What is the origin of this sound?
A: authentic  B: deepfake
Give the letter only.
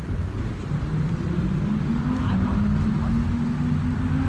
A